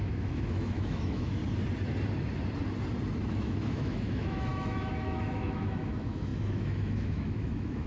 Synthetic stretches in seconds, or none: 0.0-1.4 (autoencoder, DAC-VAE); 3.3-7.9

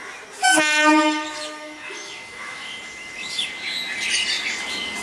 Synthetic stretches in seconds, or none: 0.5-3.5 (autoencoder, DAC-VAE)

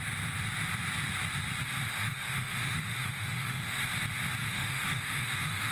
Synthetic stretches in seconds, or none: 1.9-3.8 (autoencoder, DAC-VAE); 4.4-5.7

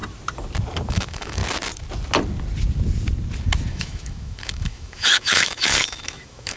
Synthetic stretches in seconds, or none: 0.9-1.4 (autoencoder, DAC-VAE); 3.7-6.6

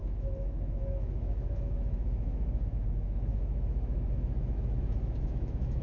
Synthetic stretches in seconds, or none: 0.0-5.8 (autoencoder, DAC-VAE)

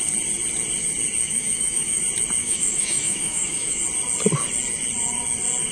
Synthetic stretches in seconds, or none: 1.2-2.0 (autoencoder, DAC-VAE); 2.4-3.8

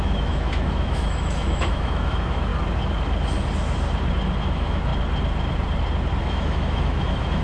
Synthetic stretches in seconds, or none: 0.0-2.5 (autoencoder, DAC-VAE); 4.4-4.9; 6.2-7.4

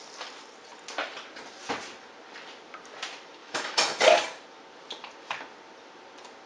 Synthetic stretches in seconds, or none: 3.4-4.0 (autoencoder, DAC-VAE)